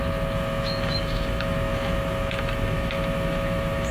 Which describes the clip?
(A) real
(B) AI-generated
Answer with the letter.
B